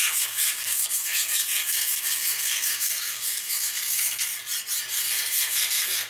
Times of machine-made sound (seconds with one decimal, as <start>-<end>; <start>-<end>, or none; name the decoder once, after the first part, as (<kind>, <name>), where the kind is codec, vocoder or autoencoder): 0.0-4.3 (codec, SNAC); 4.9-6.1